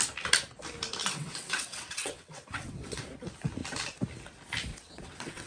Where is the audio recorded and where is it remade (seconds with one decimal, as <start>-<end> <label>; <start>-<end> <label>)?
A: 0.0-1.0 recorded; 1.0-3.0 remade; 3.0-4.7 recorded; 4.7-5.5 remade